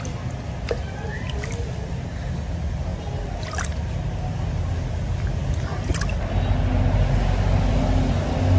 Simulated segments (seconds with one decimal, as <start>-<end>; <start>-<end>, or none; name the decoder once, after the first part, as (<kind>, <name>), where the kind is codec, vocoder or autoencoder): none